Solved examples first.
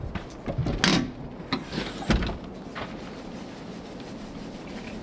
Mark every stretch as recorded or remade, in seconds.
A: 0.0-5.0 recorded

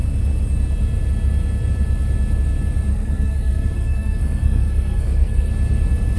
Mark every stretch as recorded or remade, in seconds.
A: 0.0-2.9 recorded; 2.9-5.5 remade; 5.5-6.2 recorded

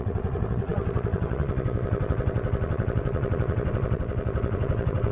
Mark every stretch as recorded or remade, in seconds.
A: 0.0-5.1 remade

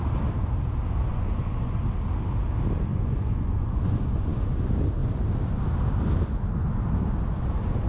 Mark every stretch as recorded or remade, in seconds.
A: 0.0-1.1 recorded; 1.1-1.8 remade; 1.8-2.9 recorded; 2.9-4.6 remade; 4.6-7.9 recorded

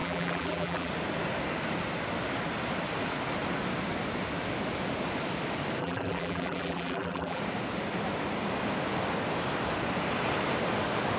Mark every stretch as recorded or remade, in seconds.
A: 0.0-0.9 remade; 0.9-5.8 recorded; 5.8-7.4 remade; 7.4-11.2 recorded

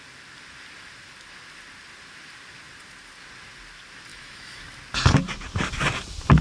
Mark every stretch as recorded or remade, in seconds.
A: 0.0-4.1 recorded; 4.1-4.6 remade; 4.6-6.4 recorded

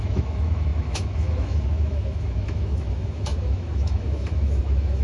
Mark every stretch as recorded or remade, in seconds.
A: 0.0-5.0 remade